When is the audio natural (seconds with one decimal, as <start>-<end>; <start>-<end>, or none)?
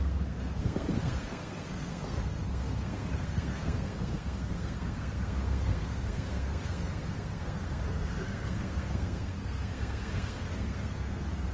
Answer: none